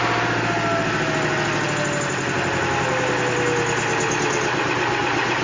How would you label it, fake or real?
real